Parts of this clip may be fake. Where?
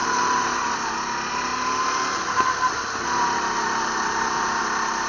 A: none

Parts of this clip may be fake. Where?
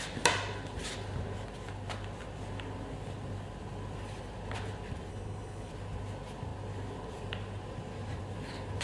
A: 5.1-5.7 (codec, HILCodec)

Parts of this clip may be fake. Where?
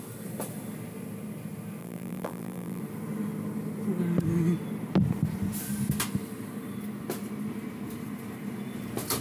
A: 1.8-2.8 (vocoder, BigVGAN v2)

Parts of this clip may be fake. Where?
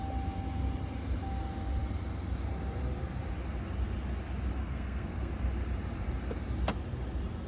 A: 4.6-5.3 (codec, SNAC)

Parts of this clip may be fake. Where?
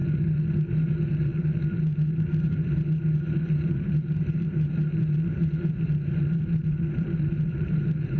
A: 0.7-8.2 (vocoder, BigVGAN v2)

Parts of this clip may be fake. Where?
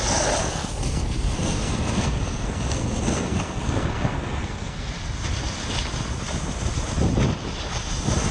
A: 0.4-4.9 (codec, SNAC)